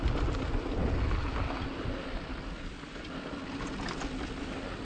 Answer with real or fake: real